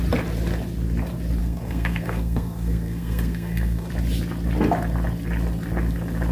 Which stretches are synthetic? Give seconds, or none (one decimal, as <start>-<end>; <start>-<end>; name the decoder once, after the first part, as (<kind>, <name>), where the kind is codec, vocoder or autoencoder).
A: 1.4-3.9 (codec, SNAC)